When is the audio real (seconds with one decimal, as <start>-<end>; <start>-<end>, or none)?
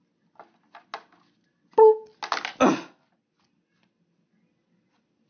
0.0-5.3